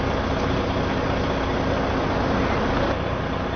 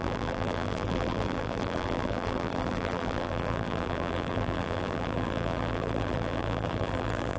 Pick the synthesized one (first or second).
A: second